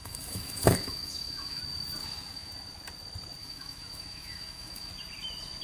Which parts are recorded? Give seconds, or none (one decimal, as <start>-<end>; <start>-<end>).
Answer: 1.6-2.0; 2.5-3.4; 4.9-5.6